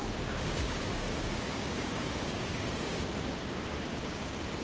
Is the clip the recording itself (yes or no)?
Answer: no